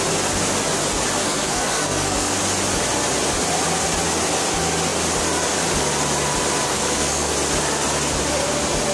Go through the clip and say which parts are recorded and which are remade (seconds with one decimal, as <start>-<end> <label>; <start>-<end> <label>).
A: 0.0-1.2 recorded; 1.2-2.4 remade; 2.4-6.7 recorded; 6.7-7.3 remade; 7.3-8.9 recorded